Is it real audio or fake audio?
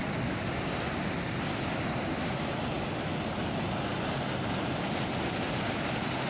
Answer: real